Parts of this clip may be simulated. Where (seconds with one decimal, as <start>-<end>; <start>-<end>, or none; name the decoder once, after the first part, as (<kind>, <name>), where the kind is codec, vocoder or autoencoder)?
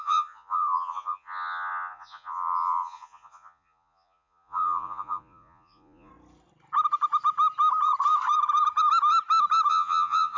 0.0-6.1 (vocoder, Vocos); 9.7-10.4